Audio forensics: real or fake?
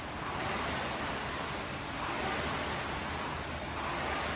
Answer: real